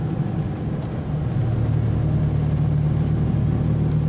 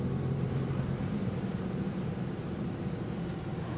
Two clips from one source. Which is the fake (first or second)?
second